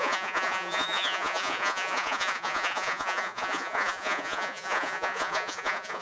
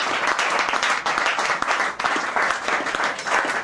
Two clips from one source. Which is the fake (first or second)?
first